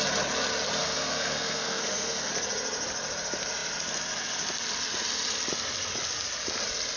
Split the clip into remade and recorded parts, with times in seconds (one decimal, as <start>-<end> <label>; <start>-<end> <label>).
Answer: 0.0-0.8 recorded; 0.8-2.3 remade; 2.3-7.0 recorded